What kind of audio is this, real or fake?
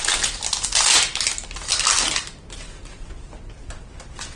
real